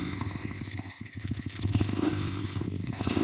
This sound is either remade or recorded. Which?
remade